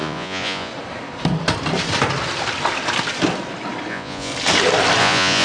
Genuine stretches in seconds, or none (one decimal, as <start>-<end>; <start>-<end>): 0.7-3.9; 4.3-5.0